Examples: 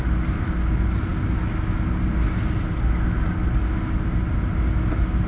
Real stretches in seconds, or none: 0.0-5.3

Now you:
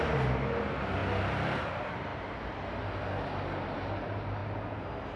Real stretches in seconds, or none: 0.0-5.2

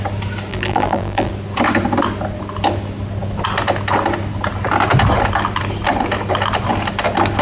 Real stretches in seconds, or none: 0.0-0.5; 1.3-7.4

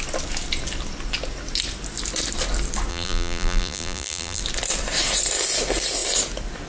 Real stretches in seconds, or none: 0.0-2.9; 4.4-6.7

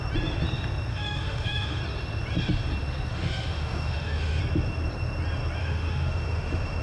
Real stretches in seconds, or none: 0.0-0.9; 1.8-3.1; 4.4-5.6

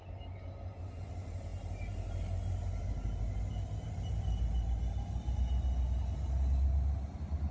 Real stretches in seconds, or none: 0.0-7.5

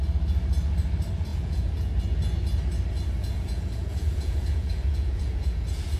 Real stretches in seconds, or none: 0.0-1.3; 1.9-3.2

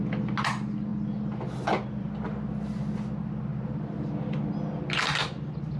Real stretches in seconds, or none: 0.0-5.8